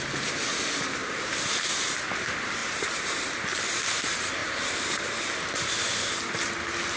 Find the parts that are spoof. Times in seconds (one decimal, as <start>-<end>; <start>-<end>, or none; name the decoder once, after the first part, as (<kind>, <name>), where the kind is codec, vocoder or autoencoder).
1.0-1.6 (vocoder, BigVGAN v2); 2.6-3.4; 4.4-5.2